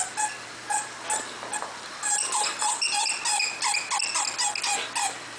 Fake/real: real